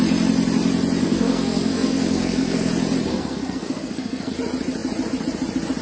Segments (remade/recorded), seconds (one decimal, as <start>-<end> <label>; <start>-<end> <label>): 0.0-1.0 recorded; 1.0-2.7 remade; 2.7-3.1 recorded; 3.1-4.3 remade; 4.3-5.8 recorded